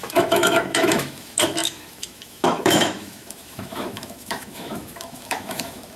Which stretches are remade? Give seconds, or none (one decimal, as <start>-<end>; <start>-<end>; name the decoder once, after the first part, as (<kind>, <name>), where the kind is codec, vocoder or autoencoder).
0.0-6.0 (autoencoder, DAC-VAE)